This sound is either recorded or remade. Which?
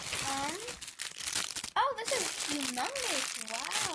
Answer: recorded